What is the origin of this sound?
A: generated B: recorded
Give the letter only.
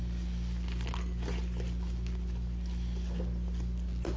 B